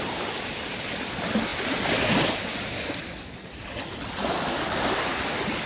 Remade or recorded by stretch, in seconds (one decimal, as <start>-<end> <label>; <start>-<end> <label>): 0.0-5.7 recorded